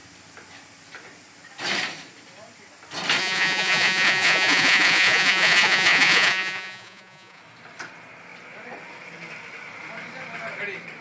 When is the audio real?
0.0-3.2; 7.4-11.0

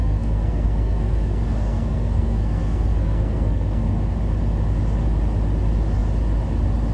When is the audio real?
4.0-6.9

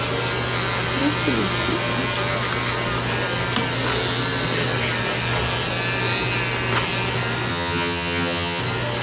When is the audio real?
0.0-7.5; 8.6-9.0

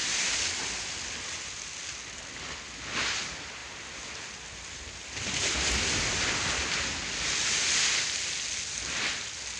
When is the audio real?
0.0-9.6

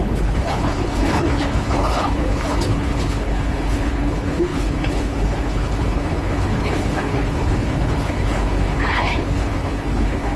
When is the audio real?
none